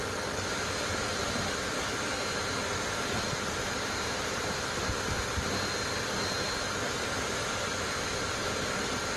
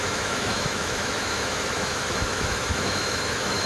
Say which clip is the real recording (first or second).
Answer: first